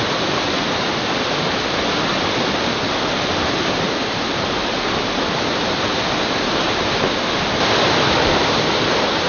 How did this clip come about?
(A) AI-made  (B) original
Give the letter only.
B